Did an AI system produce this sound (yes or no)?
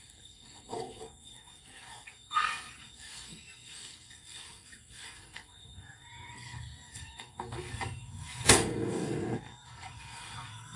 yes